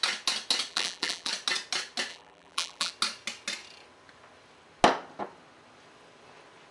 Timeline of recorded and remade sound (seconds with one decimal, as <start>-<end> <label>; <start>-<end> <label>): 0.0-0.7 recorded; 0.7-1.3 remade; 1.3-2.1 recorded; 2.1-2.9 remade; 2.9-6.7 recorded